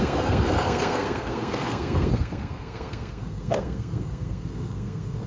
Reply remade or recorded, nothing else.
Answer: remade